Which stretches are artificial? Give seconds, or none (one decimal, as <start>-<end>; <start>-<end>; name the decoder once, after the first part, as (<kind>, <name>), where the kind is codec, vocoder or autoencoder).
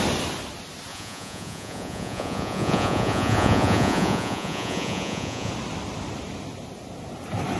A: 0.9-5.5 (vocoder, Vocos)